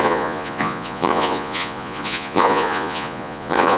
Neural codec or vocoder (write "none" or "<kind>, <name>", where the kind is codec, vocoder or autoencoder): vocoder, Vocos